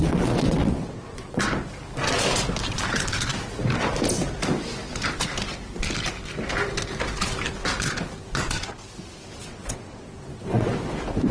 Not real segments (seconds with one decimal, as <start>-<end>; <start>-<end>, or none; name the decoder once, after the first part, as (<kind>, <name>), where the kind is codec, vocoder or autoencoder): 0.0-1.4 (vocoder, WaveNeXt); 9.4-10.7